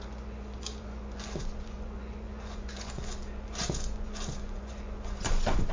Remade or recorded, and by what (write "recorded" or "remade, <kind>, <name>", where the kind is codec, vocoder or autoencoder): remade, vocoder, Vocos